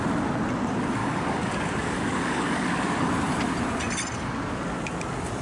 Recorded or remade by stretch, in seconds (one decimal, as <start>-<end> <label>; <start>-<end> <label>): 0.0-1.0 recorded; 1.0-3.1 remade; 3.1-5.4 recorded